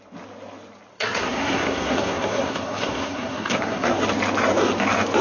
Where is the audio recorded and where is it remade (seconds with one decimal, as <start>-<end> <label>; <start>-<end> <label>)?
0.0-0.9 recorded; 0.9-4.0 remade; 4.0-5.2 recorded